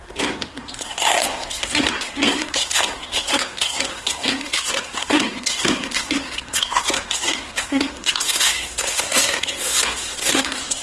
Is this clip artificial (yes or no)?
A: yes